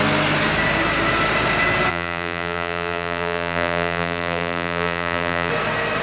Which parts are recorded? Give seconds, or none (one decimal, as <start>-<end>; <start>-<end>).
0.0-1.9; 5.5-6.0